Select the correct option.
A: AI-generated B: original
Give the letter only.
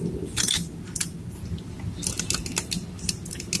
B